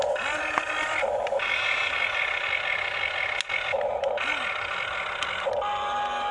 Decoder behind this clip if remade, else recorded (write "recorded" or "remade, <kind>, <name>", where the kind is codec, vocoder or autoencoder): recorded